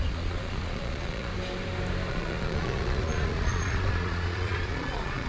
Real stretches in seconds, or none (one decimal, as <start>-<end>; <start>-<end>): 1.3-2.1